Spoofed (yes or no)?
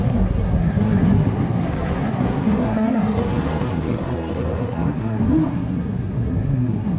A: yes